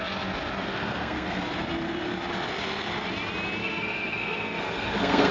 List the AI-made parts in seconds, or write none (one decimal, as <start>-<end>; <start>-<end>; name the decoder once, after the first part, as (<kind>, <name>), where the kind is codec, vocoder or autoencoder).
0.6-1.4 (codec, SNAC); 3.6-5.3